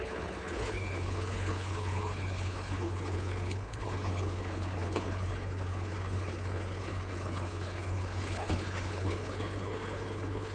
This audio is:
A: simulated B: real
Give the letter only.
A